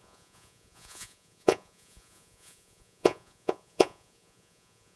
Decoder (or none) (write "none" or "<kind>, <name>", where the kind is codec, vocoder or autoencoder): vocoder, Vocos